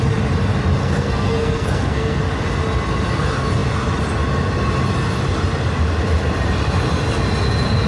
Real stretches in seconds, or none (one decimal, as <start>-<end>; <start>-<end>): 0.0-0.8; 2.2-7.9